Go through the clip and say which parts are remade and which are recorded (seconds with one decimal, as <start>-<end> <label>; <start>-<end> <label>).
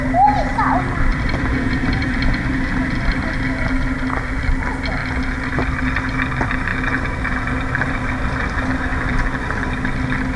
0.0-1.1 recorded; 1.1-2.1 remade; 2.1-10.4 recorded